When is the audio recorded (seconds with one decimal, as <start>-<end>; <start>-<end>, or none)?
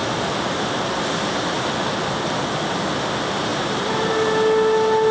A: 0.7-3.5; 4.2-5.1